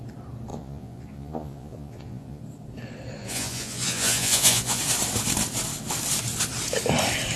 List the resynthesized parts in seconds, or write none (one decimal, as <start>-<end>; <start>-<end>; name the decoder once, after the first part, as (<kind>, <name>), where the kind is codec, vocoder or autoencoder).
0.5-2.4 (vocoder, Vocos); 3.2-4.8